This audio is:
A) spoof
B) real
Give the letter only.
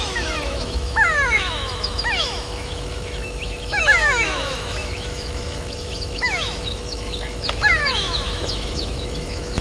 A